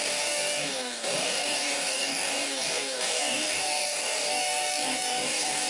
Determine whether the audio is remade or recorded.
remade